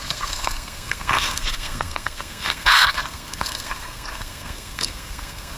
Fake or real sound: fake